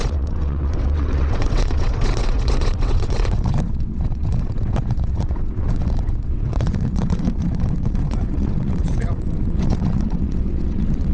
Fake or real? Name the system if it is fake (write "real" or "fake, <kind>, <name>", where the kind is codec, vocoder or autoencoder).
fake, vocoder, WaveNeXt